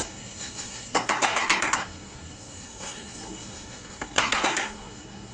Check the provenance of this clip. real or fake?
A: fake